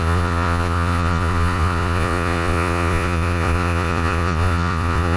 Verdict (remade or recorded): remade